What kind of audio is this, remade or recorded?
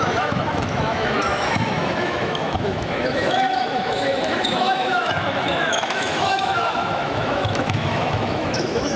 remade